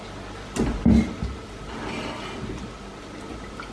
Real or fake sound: real